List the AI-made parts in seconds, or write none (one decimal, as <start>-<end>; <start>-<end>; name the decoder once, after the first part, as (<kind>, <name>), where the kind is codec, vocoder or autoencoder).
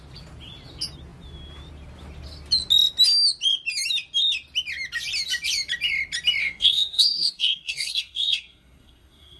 6.4-9.4 (codec, SNAC)